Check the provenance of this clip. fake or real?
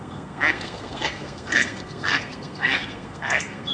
fake